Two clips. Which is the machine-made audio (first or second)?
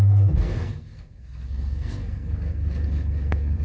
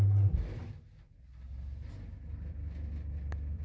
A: first